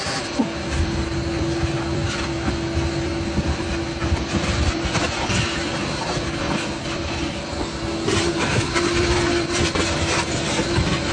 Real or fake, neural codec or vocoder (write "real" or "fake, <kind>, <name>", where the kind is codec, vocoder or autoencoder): real